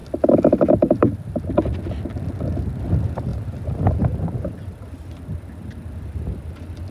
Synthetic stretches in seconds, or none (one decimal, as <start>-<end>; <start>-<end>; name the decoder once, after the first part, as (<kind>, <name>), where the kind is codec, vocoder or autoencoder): none

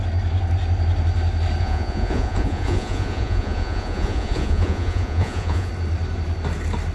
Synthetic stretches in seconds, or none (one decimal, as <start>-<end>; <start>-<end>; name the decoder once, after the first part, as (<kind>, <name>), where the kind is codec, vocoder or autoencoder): 1.6-5.7 (vocoder, Vocos)